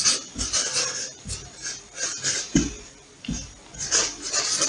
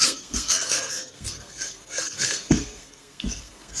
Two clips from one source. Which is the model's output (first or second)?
second